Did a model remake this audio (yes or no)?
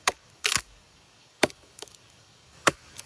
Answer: yes